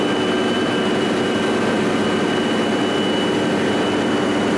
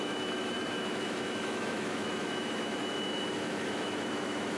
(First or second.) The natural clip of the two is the first